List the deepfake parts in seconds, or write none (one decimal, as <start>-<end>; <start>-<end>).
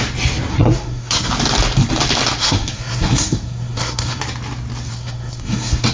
0.5-1.3; 2.4-4.2; 4.9-5.9